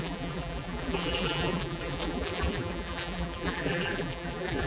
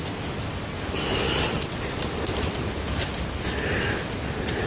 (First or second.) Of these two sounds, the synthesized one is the first